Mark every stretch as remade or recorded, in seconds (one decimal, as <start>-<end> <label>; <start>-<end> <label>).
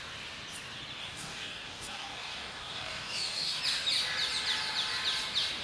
0.0-1.0 recorded; 1.0-3.6 remade; 3.6-5.6 recorded